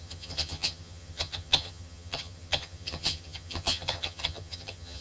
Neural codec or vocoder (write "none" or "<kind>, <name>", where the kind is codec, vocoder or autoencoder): vocoder, HiFi-GAN